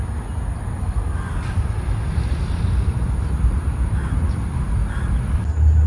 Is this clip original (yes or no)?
yes